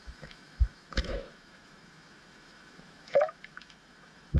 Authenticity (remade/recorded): remade